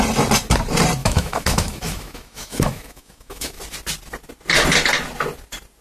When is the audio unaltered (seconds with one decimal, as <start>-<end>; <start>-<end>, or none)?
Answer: 0.0-1.0; 3.6-5.8